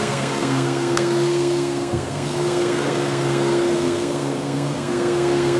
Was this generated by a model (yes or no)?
yes